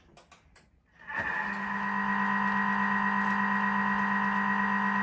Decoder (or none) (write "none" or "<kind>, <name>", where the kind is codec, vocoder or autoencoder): none